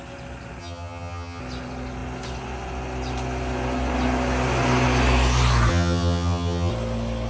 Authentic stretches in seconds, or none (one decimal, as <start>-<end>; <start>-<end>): 0.0-0.6; 1.4-5.7; 6.7-7.3